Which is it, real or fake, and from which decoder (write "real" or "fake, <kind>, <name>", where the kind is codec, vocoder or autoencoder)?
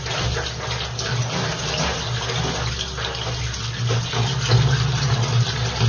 real